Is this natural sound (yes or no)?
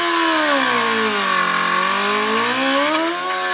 yes